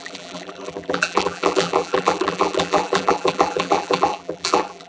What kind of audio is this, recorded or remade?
remade